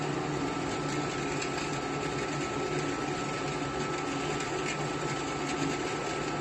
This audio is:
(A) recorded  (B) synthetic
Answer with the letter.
A